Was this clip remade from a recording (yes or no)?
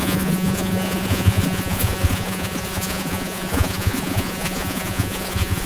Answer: yes